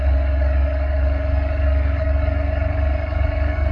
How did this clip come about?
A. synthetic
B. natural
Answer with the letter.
A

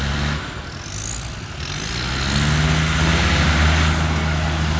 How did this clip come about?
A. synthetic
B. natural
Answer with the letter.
B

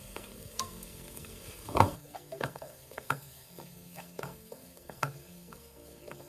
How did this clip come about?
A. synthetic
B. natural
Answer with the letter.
A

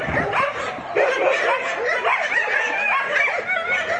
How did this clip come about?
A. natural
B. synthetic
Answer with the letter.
A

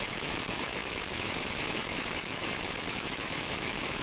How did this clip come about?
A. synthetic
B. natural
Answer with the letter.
A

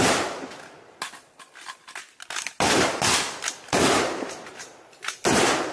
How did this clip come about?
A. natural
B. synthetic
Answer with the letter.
A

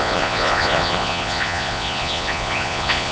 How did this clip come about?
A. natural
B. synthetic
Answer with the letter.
B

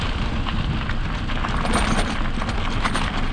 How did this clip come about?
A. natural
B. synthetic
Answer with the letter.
A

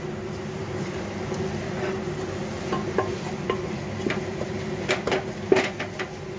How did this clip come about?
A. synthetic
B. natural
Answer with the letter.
B